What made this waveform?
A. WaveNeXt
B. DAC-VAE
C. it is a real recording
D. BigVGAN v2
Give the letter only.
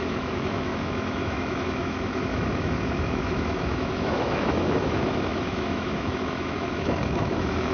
B